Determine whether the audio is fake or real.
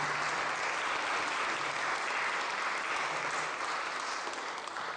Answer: real